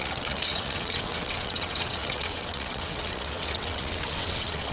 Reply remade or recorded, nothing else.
remade